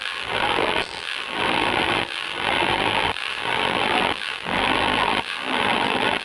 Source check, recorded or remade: remade